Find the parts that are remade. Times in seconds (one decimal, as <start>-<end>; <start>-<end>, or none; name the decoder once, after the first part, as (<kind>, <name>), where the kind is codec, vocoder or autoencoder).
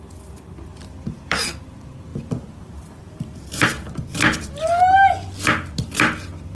0.7-1.6 (vocoder, BigVGAN v2); 2.1-4.8